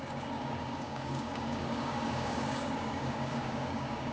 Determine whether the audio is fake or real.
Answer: fake